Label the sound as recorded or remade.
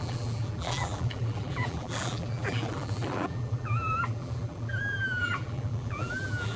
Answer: remade